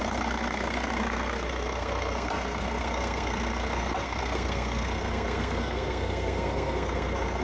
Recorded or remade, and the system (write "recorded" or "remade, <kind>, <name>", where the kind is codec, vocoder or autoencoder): remade, codec, SNAC